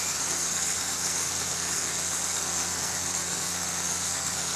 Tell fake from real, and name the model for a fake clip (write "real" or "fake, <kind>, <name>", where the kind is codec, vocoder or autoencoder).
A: fake, codec, SNAC